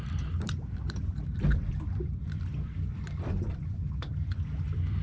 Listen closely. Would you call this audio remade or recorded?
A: remade